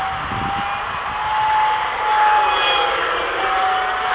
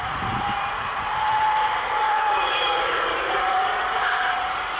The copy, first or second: second